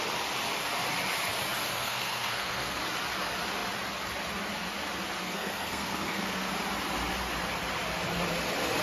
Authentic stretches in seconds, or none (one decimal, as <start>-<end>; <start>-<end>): 0.0-1.7; 2.8-5.2; 6.5-8.8